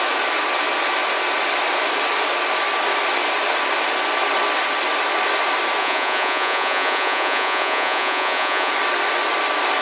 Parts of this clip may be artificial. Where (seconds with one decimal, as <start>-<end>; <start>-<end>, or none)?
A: 5.8-8.7